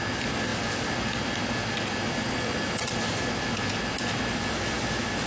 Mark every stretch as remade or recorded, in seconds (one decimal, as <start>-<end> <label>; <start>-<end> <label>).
0.0-5.3 recorded